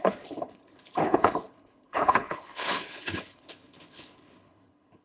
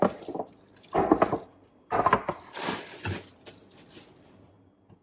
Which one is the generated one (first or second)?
first